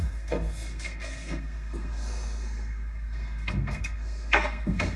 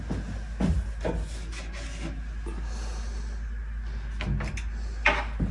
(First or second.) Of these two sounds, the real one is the second